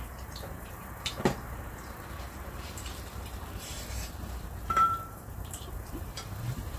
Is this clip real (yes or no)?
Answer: no